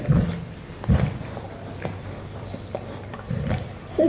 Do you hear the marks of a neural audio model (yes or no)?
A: no